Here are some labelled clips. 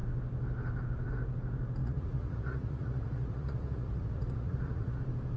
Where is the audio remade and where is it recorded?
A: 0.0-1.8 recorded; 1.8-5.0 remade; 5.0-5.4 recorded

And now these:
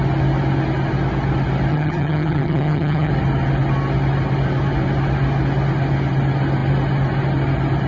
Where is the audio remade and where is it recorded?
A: 0.0-1.7 recorded; 1.7-3.1 remade; 3.1-7.9 recorded

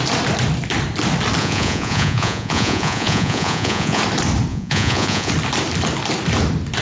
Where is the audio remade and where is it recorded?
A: 0.0-1.4 recorded; 1.4-4.0 remade; 4.0-4.5 recorded; 4.5-5.3 remade; 5.3-6.8 recorded

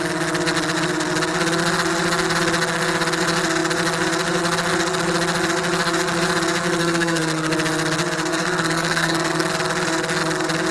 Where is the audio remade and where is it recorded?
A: 0.0-6.8 recorded; 6.8-7.5 remade; 7.5-8.3 recorded; 8.3-9.5 remade; 9.5-10.7 recorded

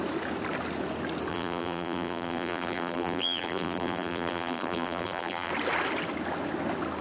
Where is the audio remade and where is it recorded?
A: 0.0-1.3 recorded; 1.3-5.5 remade; 5.5-7.0 recorded

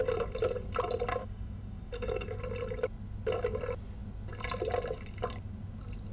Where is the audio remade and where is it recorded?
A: 0.0-1.2 recorded; 1.2-2.4 remade; 2.4-6.1 recorded